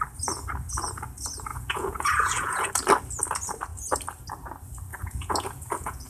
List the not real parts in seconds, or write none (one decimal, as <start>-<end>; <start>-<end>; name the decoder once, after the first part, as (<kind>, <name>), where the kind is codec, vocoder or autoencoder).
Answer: 1.5-2.7 (vocoder, Vocos); 4.9-6.1